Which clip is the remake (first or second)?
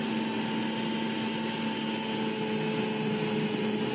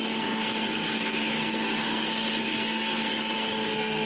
second